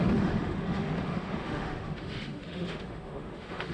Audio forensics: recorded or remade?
remade